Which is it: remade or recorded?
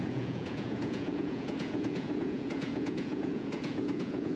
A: remade